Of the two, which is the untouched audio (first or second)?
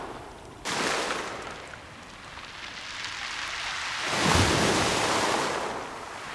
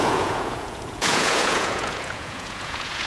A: first